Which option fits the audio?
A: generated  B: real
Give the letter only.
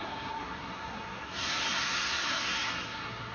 A